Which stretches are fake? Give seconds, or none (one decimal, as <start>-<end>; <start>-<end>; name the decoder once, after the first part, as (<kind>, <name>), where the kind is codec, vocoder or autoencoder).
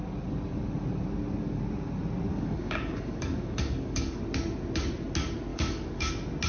2.3-4.2 (codec, DAC); 5.5-6.1